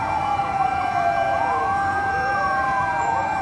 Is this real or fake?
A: fake